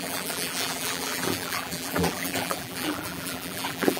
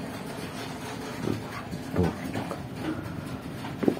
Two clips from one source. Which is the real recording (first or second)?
second